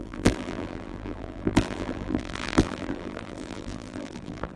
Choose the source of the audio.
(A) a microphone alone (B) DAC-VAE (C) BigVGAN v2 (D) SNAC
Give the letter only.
C